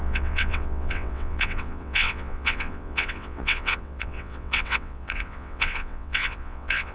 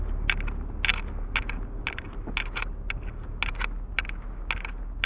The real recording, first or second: second